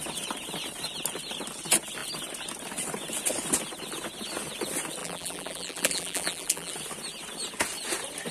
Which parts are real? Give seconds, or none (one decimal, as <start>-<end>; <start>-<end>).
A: 0.0-5.0; 6.7-8.3

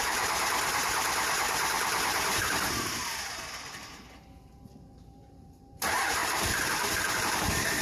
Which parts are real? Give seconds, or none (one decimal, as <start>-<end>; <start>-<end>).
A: none

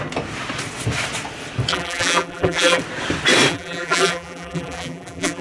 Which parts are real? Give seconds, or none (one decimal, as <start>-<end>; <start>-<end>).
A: 0.0-1.7; 2.8-3.5

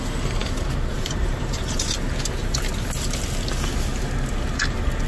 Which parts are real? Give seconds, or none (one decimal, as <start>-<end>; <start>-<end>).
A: 0.0-0.9; 2.0-5.1

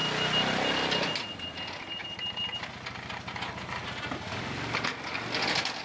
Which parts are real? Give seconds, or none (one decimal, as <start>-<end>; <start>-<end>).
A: 0.0-5.8